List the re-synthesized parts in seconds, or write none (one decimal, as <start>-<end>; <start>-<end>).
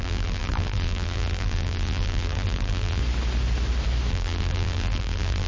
0.0-3.0; 4.1-5.5